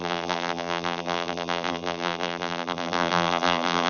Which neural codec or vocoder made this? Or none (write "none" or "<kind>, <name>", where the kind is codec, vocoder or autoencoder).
vocoder, BigVGAN v2